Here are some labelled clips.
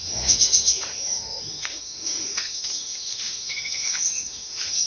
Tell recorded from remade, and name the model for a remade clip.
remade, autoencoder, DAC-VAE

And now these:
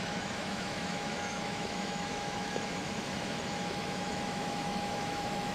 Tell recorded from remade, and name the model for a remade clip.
remade, autoencoder, DAC-VAE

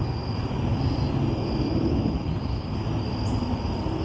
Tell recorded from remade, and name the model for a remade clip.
recorded